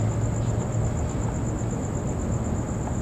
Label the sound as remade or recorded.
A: recorded